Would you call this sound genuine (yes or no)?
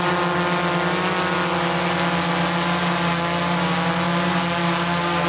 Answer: yes